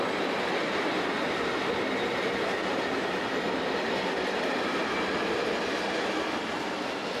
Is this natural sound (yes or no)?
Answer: yes